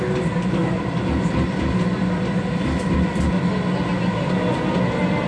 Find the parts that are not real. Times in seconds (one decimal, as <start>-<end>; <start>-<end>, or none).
none